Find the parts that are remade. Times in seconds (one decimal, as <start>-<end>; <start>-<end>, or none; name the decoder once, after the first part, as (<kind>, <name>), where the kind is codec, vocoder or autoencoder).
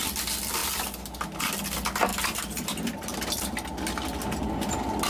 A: none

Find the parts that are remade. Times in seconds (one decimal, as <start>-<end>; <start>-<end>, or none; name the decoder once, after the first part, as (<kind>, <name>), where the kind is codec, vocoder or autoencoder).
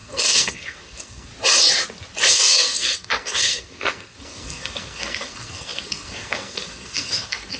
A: 0.0-1.3 (codec, SNAC); 2.3-7.6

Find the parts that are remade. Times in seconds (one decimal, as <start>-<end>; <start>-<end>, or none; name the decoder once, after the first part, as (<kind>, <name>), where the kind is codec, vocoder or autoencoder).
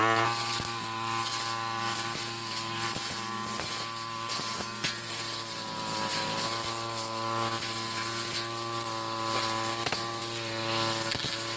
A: none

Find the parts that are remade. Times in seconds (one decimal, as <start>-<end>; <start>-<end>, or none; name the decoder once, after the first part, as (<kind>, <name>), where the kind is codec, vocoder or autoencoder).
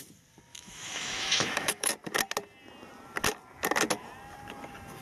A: 0.5-1.9 (autoencoder, DAC-VAE)